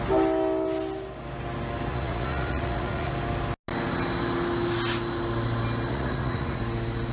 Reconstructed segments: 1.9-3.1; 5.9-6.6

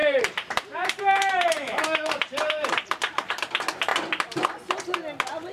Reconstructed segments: 0.0-3.3

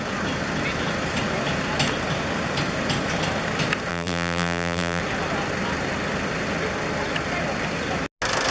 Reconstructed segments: 3.9-5.0